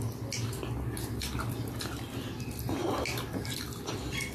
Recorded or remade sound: recorded